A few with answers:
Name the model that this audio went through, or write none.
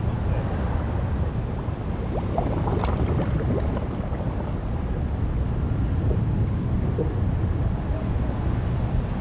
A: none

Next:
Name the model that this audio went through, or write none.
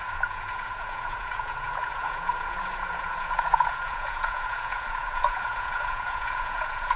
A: vocoder, Vocos